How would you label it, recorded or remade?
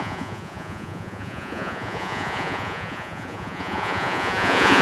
remade